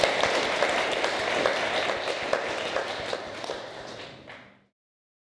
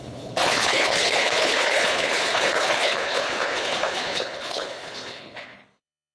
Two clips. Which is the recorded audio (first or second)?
first